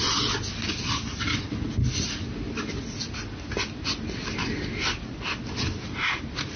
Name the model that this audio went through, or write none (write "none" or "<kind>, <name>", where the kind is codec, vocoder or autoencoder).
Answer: none